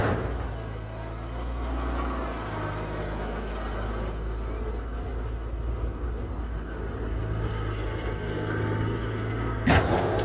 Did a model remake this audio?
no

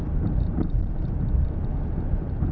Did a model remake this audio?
yes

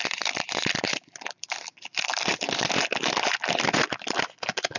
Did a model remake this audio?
yes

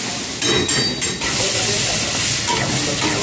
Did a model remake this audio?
no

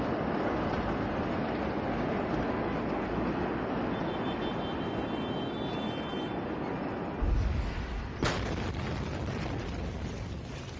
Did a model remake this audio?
no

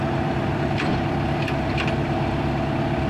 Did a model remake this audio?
yes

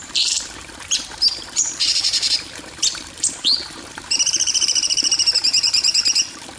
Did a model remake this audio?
yes